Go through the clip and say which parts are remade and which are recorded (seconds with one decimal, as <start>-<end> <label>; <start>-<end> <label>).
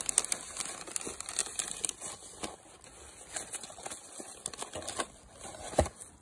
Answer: 0.0-6.2 recorded